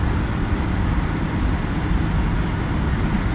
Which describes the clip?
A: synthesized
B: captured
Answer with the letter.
B